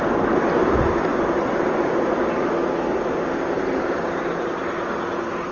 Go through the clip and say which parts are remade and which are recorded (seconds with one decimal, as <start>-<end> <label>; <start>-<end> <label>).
0.0-5.5 recorded